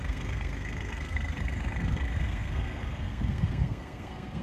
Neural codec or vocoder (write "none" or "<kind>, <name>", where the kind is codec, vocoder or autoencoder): codec, SNAC